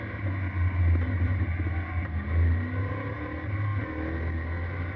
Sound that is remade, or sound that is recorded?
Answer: recorded